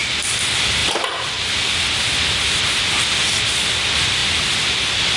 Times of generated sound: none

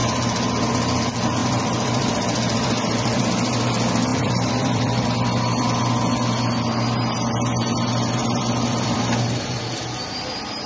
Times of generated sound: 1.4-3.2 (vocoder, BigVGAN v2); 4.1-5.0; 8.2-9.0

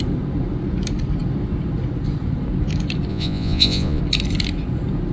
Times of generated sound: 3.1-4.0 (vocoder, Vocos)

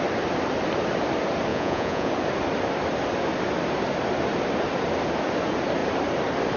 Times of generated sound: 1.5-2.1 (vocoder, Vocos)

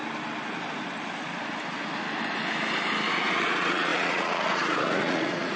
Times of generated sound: 3.1-5.6 (vocoder, Vocos)